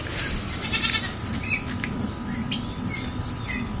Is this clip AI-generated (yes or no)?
no